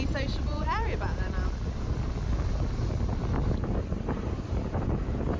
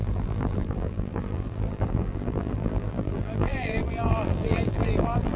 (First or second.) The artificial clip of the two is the second